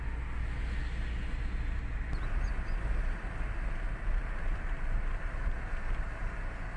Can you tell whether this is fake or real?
real